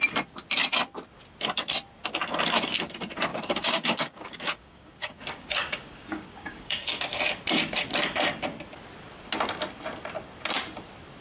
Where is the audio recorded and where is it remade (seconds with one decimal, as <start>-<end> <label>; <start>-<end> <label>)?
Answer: 0.0-3.3 recorded; 3.3-7.2 remade; 7.2-11.2 recorded